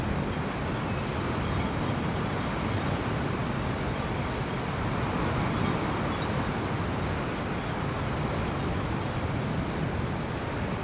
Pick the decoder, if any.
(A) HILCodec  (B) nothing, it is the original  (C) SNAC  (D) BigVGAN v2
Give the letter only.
B